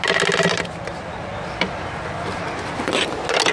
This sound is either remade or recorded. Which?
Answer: recorded